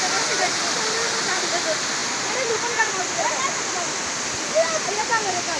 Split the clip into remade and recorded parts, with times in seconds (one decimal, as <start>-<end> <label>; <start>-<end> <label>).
0.0-5.6 recorded